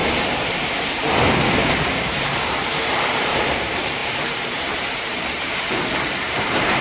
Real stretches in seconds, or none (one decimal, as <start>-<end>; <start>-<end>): 2.3-2.9